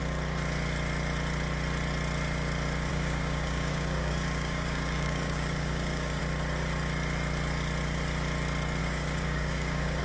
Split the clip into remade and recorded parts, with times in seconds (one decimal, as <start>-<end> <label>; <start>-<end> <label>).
0.0-2.9 recorded; 2.9-6.2 remade; 6.2-8.8 recorded; 8.8-10.0 remade